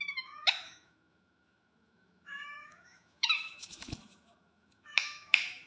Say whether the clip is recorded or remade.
remade